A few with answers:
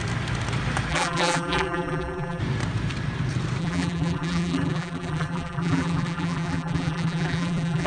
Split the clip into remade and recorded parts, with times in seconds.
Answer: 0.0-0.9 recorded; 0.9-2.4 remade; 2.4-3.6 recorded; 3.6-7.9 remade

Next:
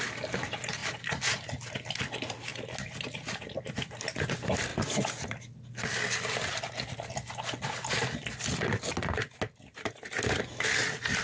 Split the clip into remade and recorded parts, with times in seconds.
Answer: 0.0-11.2 recorded

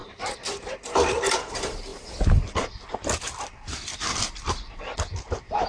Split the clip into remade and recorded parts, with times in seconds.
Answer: 0.0-0.7 recorded; 0.7-1.9 remade; 1.9-5.3 recorded; 5.3-5.7 remade

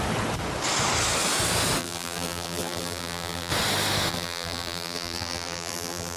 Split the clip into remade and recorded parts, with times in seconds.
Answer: 0.0-1.8 recorded; 1.8-3.5 remade; 3.5-4.1 recorded; 4.1-6.2 remade

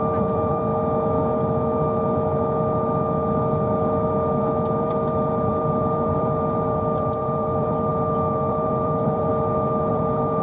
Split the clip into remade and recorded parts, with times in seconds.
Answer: 0.0-0.7 remade; 0.7-4.8 recorded; 4.8-7.9 remade; 7.9-8.5 recorded; 8.5-9.3 remade; 9.3-9.9 recorded; 9.9-10.4 remade

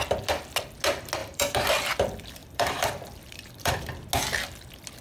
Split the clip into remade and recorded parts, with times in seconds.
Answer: 0.0-1.2 recorded; 1.2-1.7 remade; 1.7-2.4 recorded; 2.4-3.8 remade; 3.8-5.0 recorded

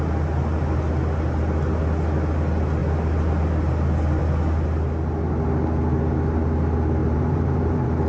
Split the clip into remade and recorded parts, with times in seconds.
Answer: 0.0-7.0 recorded; 7.0-8.1 remade